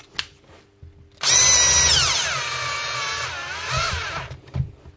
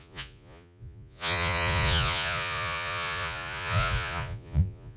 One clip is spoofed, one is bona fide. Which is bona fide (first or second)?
first